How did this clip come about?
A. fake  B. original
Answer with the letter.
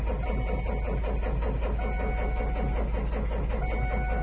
B